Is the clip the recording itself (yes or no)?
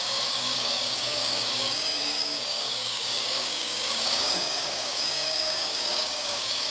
no